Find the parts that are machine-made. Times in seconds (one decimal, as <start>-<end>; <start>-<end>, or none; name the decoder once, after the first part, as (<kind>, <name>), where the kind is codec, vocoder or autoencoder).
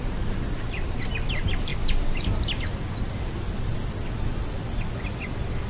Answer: none